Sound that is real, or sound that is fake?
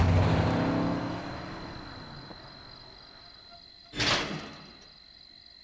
real